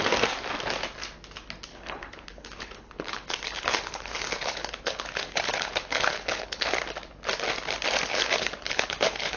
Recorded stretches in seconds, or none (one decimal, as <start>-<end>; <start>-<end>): 0.0-1.7; 6.8-8.1